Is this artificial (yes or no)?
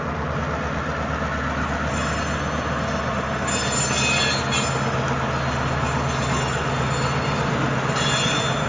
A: no